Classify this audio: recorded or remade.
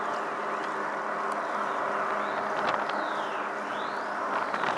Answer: recorded